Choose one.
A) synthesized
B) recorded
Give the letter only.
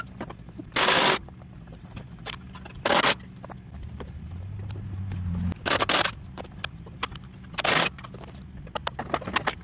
B